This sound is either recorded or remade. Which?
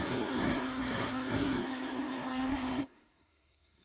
remade